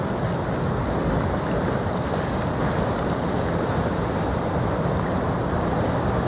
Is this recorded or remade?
recorded